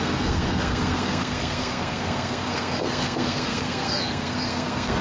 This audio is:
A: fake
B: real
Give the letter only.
A